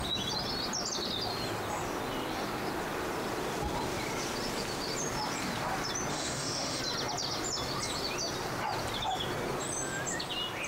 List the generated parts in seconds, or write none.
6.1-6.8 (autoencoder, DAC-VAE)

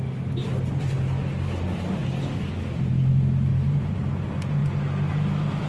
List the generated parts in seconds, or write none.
3.5-4.1 (vocoder, BigVGAN v2)

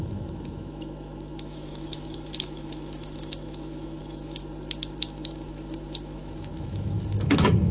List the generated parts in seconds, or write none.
0.0-4.4 (autoencoder, DAC-VAE); 5.0-7.7

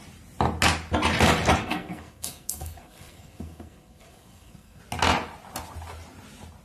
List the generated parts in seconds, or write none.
1.6-4.8 (codec, SNAC)

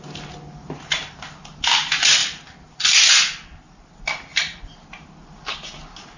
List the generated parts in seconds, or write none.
none

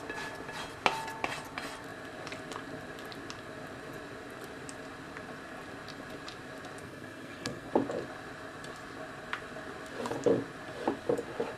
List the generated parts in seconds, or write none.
6.8-7.7 (codec, SNAC)

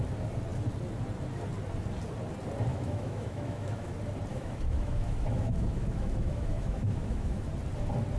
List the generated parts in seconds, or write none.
2.7-3.9 (autoencoder, DAC-VAE); 4.3-7.5

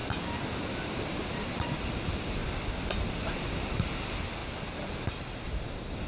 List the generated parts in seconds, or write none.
1.0-2.4 (vocoder, BigVGAN v2); 3.0-4.4; 5.0-6.1